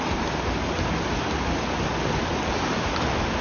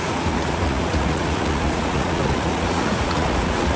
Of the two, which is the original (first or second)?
first